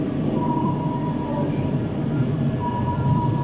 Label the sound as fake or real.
fake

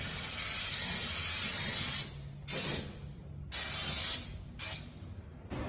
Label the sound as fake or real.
real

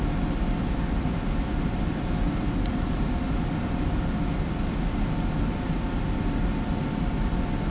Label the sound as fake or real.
real